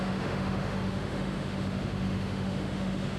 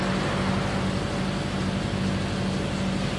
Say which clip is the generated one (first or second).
first